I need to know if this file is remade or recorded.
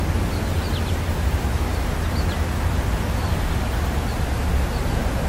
recorded